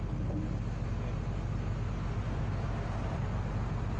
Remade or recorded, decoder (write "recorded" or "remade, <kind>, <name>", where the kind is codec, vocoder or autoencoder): recorded